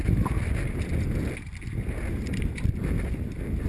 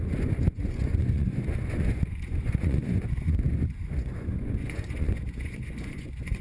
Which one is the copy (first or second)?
second